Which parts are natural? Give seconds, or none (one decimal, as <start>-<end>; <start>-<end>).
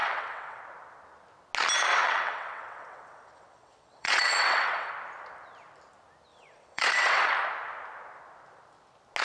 0.6-1.9; 4.9-6.3; 7.3-9.2